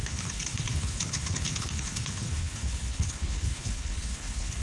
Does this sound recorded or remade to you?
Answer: remade